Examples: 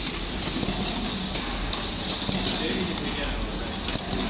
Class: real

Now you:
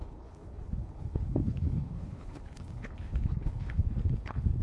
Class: fake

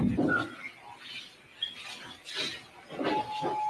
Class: real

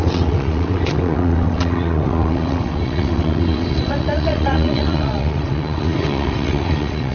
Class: fake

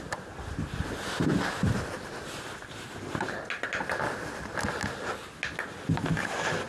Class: real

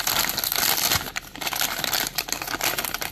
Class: real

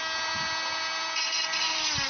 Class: real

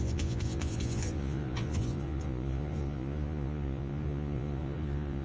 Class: fake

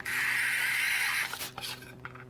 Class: real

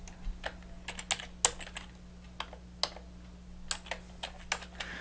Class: real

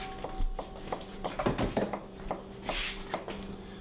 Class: real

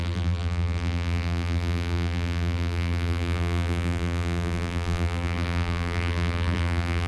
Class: fake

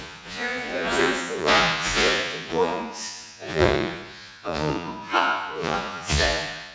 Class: fake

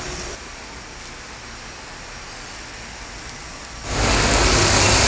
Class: real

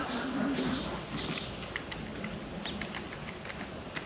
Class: real